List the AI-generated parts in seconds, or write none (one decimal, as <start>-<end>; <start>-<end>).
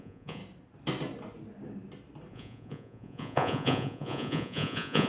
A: 0.0-0.4; 2.3-5.1